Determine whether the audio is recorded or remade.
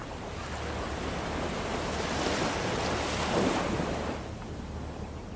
recorded